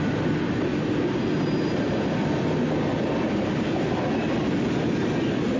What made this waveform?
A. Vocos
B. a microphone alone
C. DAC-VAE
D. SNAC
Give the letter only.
B